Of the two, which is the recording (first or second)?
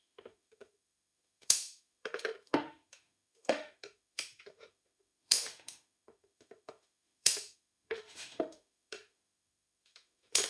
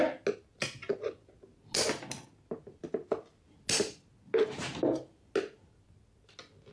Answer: second